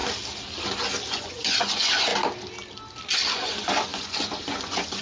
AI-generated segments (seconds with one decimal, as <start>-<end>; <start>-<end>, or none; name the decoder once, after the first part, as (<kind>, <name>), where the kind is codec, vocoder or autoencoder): 1.1-2.1 (vocoder, Vocos); 3.3-5.0